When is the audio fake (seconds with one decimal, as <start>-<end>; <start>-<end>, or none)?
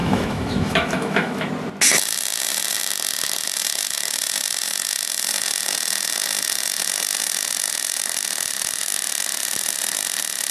0.0-1.5